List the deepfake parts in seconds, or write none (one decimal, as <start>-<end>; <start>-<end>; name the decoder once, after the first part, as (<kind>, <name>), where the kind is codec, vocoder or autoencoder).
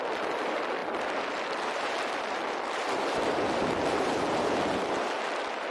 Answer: none